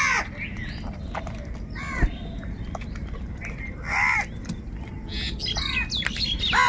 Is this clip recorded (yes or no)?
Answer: yes